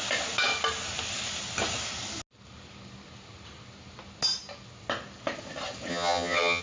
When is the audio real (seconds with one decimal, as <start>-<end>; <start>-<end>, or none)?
0.0-5.9

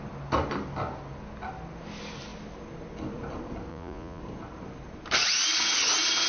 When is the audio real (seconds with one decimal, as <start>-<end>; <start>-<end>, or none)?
0.0-3.7; 4.2-6.3

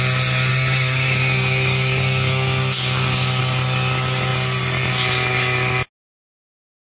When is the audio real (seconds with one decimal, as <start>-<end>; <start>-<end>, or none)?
0.0-0.5; 3.4-6.9

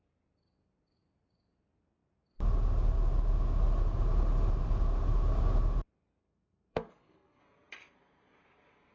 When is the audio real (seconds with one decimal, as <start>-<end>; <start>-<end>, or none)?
0.0-6.2; 7.4-8.9